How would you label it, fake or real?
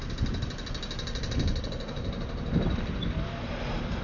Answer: real